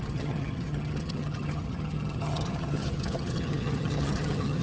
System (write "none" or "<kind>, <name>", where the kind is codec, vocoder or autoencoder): vocoder, HiFi-GAN